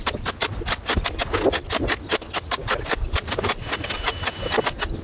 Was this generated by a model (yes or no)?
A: no